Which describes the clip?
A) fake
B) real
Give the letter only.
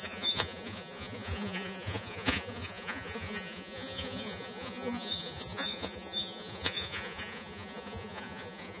A